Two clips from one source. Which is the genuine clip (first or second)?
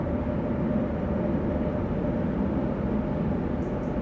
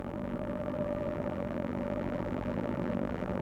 first